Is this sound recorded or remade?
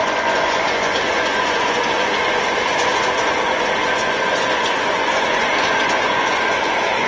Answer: remade